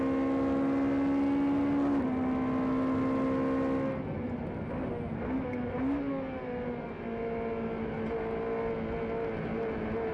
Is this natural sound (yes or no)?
yes